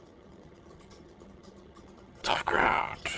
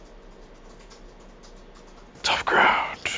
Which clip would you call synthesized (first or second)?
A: first